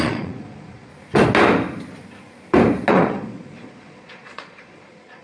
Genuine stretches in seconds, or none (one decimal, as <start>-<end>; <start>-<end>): 0.9-2.9

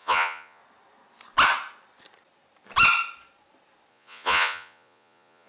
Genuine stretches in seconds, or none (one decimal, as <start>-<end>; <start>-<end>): 0.6-3.9

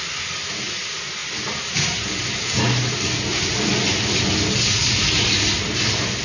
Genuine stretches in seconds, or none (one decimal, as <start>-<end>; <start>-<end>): 0.0-6.2

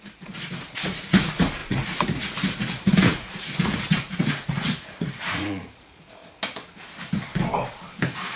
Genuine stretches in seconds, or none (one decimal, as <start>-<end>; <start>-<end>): 6.2-8.4

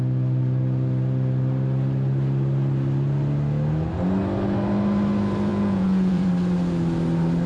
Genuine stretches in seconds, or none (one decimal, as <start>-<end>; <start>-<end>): 0.0-5.5; 6.3-7.5